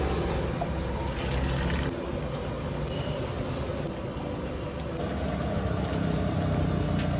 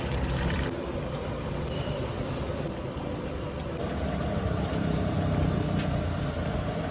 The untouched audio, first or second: first